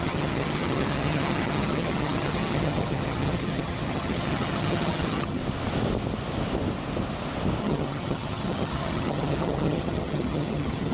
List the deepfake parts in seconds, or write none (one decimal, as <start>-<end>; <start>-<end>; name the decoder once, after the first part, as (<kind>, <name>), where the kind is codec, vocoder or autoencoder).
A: 0.0-5.4 (vocoder, HiFi-GAN); 7.6-10.9